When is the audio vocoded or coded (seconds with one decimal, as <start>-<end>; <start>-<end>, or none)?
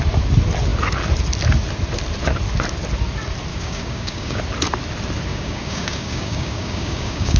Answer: 3.5-4.4; 5.3-7.4